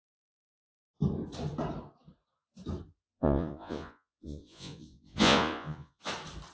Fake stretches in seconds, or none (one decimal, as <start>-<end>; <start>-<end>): 3.1-6.1

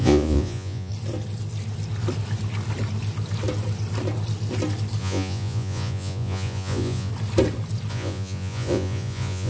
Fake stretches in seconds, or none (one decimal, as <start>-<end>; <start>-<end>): 0.0-0.9; 5.0-7.1; 7.9-9.5

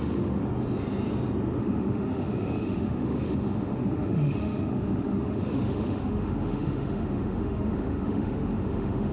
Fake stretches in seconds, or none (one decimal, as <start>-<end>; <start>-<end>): 0.0-0.4; 1.6-9.1

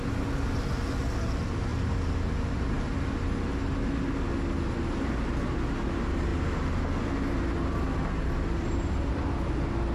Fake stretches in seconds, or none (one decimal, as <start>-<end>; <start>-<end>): none

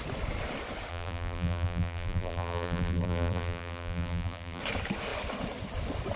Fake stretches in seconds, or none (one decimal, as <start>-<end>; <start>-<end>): 0.9-4.6

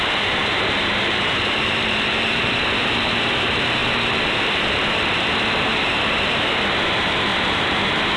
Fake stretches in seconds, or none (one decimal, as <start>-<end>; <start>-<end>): 0.0-8.2